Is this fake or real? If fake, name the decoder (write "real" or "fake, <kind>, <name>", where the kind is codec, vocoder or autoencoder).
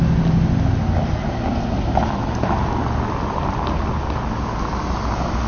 real